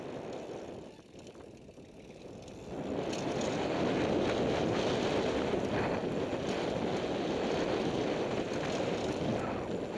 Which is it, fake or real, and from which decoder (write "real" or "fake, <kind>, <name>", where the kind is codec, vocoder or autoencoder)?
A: real